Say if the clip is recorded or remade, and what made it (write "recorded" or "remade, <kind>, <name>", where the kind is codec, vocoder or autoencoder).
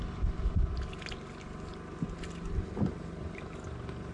recorded